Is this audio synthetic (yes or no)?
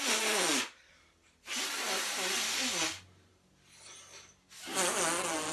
no